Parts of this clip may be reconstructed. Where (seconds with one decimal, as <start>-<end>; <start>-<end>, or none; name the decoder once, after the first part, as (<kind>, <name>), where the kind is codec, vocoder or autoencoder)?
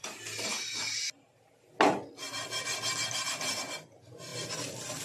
none